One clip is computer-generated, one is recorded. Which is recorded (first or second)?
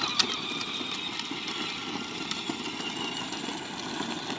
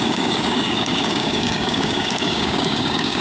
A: first